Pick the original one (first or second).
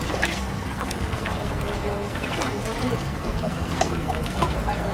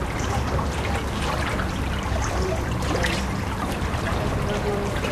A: second